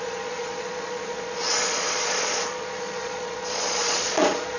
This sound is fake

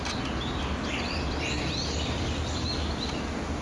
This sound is real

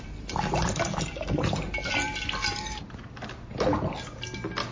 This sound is real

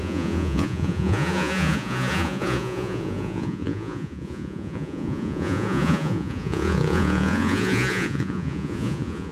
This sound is fake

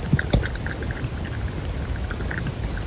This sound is real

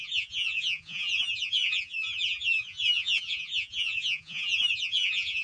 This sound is fake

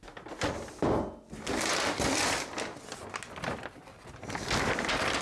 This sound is real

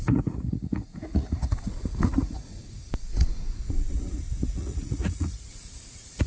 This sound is fake